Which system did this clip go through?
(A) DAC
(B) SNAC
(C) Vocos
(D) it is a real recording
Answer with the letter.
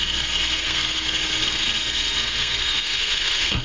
B